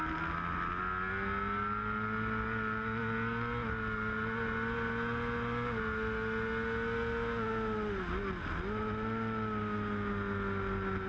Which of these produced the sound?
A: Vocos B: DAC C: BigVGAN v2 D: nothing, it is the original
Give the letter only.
D